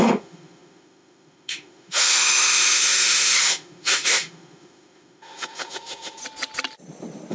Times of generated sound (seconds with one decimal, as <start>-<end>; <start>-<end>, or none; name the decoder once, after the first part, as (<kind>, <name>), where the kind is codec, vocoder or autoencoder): 0.0-6.2 (autoencoder, DAC-VAE)